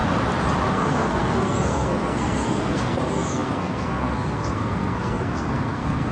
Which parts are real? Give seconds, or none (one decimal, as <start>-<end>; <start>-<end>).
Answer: 0.0-0.7